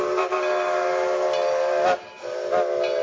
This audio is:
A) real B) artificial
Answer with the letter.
A